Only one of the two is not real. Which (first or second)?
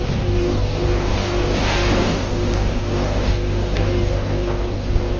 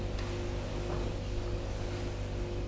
first